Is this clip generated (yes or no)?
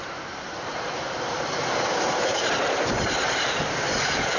yes